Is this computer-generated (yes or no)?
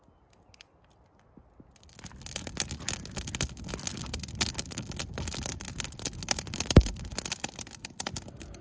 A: no